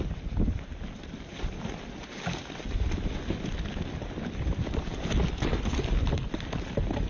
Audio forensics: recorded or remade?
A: recorded